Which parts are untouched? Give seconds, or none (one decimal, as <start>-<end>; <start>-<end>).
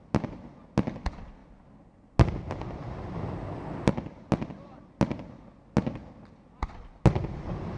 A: 0.0-7.8